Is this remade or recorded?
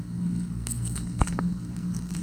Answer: remade